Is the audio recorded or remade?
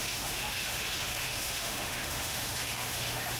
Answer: remade